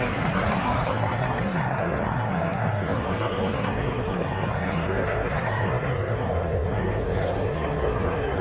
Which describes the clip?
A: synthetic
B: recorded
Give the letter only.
A